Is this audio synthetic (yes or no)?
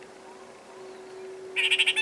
no